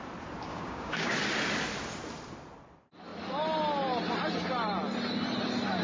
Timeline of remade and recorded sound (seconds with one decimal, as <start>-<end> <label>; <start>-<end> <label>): 0.0-0.5 recorded; 0.5-1.1 remade; 1.1-5.8 recorded